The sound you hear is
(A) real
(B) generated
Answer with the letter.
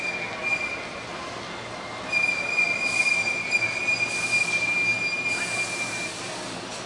A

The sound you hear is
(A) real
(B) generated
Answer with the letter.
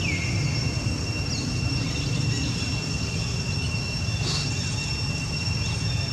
A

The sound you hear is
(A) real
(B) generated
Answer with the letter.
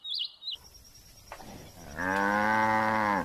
A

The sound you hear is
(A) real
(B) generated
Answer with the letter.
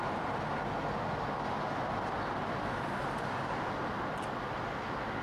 A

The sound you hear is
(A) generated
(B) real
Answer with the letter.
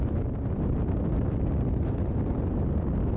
B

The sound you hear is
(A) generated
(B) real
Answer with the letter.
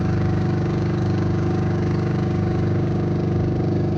A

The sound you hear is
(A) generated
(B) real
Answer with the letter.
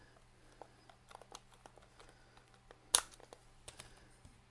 B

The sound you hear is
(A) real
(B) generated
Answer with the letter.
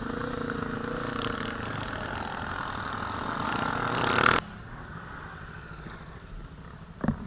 A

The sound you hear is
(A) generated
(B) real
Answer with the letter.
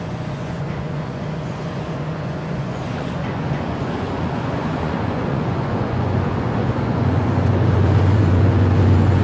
A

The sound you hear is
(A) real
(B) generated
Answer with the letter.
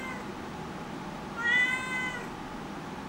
A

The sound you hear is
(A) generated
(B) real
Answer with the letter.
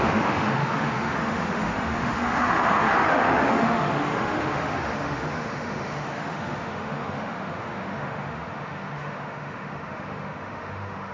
A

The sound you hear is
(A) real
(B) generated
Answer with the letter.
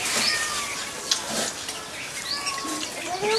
A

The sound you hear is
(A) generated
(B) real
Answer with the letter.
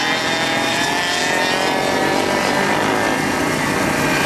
A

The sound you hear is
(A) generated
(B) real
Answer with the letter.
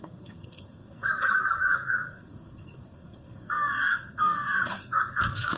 A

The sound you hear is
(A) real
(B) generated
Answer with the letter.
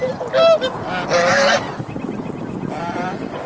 A